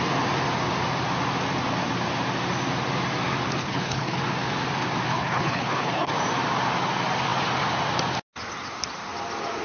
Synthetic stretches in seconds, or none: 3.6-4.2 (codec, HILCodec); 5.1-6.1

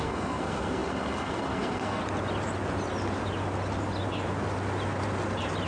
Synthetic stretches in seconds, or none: 0.0-2.0 (codec, SNAC)

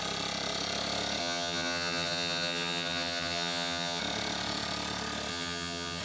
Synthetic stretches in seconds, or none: 1.2-4.0 (vocoder, HiFi-GAN); 5.3-6.0

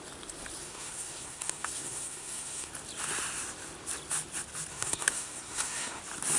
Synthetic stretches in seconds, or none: 0.6-2.7 (codec, SNAC); 4.7-6.0

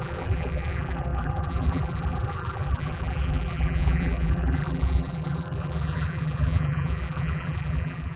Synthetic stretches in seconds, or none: 0.0-8.2 (vocoder, BigVGAN v2)

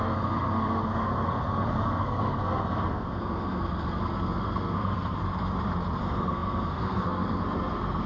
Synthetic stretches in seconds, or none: 0.0-5.2 (codec, SNAC); 6.0-8.1

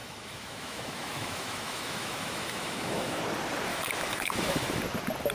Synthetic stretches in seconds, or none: 0.0-3.2 (autoencoder, DAC-VAE); 3.7-4.8